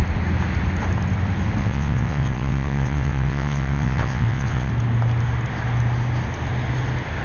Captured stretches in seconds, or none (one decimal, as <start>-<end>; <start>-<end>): 0.0-1.6; 4.7-7.2